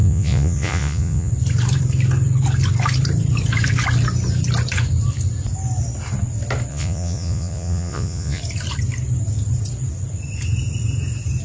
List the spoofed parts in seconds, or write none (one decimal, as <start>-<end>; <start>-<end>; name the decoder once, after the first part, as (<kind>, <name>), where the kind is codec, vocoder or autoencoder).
0.0-1.3 (vocoder, Vocos); 6.7-8.4